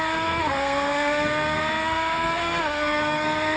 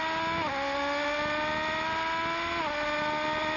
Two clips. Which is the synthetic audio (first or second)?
first